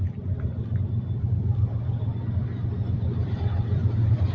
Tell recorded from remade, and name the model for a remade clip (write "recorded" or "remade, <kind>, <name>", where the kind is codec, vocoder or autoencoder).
remade, vocoder, BigVGAN v2